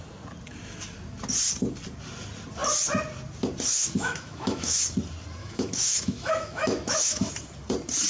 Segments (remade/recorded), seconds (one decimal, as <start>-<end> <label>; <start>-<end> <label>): 0.0-3.7 recorded; 3.7-4.8 remade; 4.8-5.4 recorded; 5.4-7.3 remade; 7.3-8.1 recorded